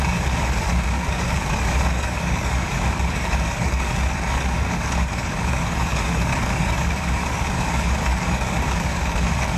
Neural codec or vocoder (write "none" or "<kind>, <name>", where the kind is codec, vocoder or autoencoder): codec, DAC